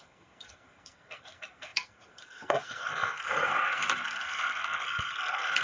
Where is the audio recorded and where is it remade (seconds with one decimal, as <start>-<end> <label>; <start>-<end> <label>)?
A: 0.0-5.6 remade